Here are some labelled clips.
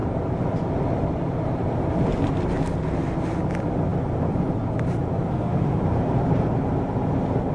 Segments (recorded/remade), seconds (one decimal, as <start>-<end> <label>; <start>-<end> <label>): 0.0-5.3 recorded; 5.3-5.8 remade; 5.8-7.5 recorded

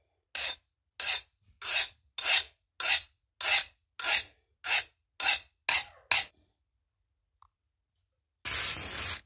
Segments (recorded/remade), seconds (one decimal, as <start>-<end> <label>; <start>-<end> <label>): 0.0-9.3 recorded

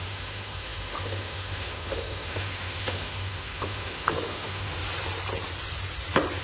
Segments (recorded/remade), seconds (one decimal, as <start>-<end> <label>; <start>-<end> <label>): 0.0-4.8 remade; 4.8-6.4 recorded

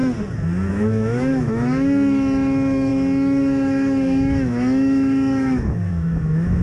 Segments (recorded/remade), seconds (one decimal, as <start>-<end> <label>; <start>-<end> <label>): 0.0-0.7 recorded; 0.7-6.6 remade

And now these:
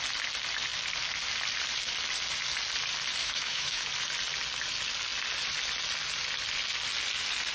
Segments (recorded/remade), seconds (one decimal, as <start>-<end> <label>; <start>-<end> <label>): 0.0-3.2 recorded; 3.2-3.9 remade; 3.9-7.5 recorded

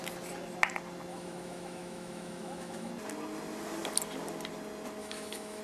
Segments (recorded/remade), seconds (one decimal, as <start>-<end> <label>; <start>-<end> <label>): 0.0-1.1 recorded; 1.1-2.9 remade; 2.9-5.0 recorded; 5.0-5.6 remade

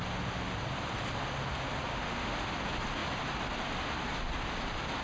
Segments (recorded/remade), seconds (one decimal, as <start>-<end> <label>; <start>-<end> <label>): 0.0-1.9 recorded; 1.9-2.6 remade; 2.6-5.0 recorded

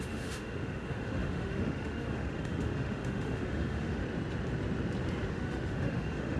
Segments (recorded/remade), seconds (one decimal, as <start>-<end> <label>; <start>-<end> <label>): 0.0-4.0 remade; 4.0-5.3 recorded; 5.3-6.4 remade